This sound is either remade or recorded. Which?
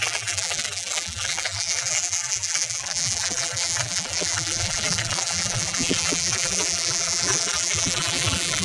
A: remade